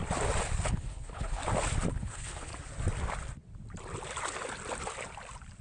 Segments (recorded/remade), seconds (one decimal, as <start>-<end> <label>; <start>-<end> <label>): 0.0-0.7 recorded; 0.7-1.4 remade; 1.4-1.9 recorded; 1.9-2.5 remade; 2.5-5.6 recorded